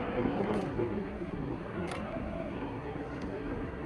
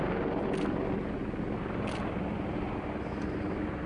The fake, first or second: first